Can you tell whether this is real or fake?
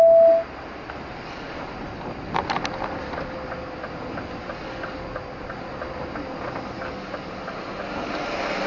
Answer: real